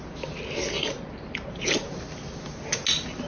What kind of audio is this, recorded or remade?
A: recorded